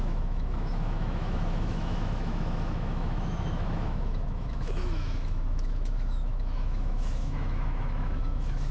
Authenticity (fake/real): fake